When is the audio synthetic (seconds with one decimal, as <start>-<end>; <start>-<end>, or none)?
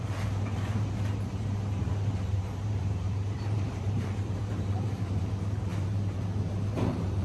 0.0-7.2